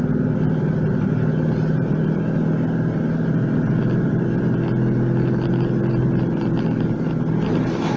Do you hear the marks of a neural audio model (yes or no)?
no